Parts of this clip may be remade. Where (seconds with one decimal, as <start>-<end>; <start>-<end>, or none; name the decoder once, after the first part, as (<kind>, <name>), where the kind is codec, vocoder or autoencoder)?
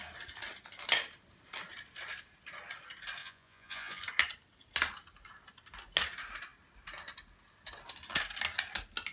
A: 3.2-4.0 (vocoder, Vocos)